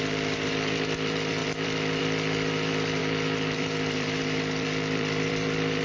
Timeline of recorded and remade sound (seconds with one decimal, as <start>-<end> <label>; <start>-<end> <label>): 0.0-5.8 remade

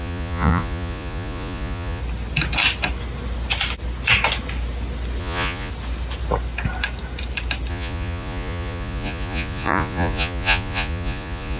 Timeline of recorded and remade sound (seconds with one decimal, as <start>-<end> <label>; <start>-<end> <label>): 0.0-2.0 remade; 2.0-5.2 recorded; 5.2-5.7 remade; 5.7-7.7 recorded; 7.7-11.6 remade

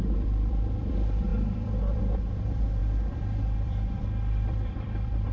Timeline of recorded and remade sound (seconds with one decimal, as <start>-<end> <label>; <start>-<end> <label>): 0.0-5.3 remade